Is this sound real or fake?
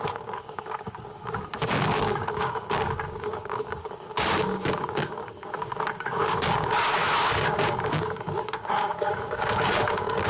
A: fake